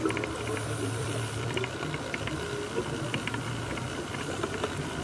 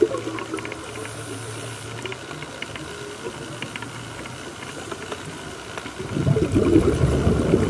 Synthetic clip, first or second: first